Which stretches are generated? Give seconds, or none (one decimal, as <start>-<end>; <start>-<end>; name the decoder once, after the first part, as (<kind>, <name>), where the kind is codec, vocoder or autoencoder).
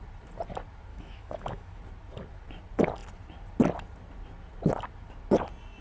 0.9-1.8 (autoencoder, DAC-VAE)